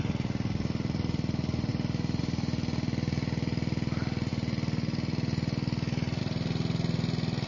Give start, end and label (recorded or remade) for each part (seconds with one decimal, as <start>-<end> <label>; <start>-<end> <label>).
0.0-7.5 recorded